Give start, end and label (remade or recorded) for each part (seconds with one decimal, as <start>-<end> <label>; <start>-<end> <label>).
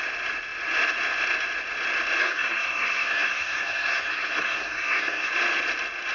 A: 0.0-2.2 recorded; 2.2-5.3 remade; 5.3-6.1 recorded